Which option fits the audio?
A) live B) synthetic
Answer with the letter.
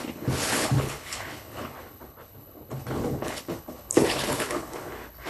B